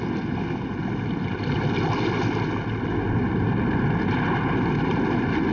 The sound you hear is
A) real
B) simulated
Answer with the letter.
A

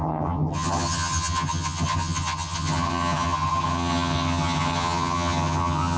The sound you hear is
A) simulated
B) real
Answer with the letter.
A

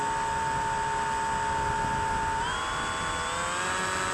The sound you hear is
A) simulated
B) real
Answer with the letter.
B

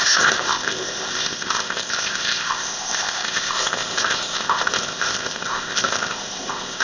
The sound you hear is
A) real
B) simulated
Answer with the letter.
B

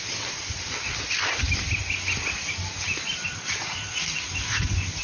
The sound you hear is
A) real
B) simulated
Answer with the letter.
A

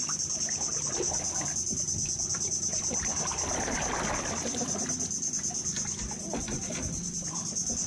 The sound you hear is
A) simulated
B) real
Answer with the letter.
B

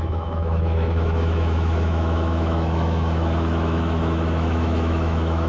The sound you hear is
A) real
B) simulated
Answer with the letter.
B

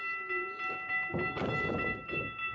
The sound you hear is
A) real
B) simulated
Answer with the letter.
A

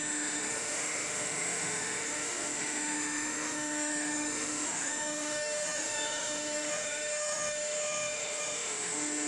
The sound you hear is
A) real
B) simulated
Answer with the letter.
B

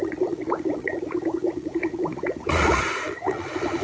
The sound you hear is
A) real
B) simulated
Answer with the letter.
B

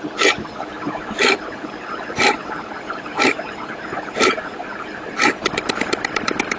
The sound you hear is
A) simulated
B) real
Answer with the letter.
A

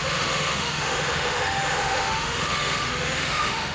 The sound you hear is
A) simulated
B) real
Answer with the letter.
A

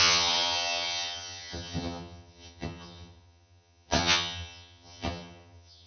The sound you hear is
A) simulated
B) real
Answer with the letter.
A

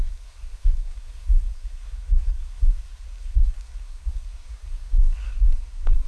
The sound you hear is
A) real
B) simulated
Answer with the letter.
B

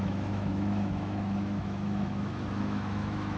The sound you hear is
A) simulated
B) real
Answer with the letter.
A